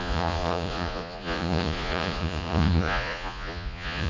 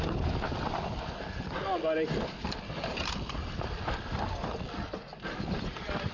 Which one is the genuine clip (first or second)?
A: second